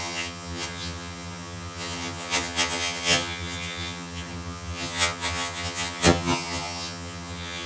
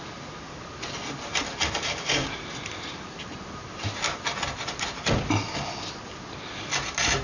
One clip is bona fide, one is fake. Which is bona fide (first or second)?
second